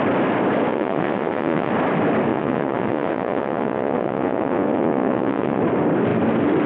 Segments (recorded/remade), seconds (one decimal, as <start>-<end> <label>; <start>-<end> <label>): 0.0-0.7 recorded; 0.7-1.7 remade; 1.7-2.3 recorded; 2.3-5.6 remade; 5.6-6.7 recorded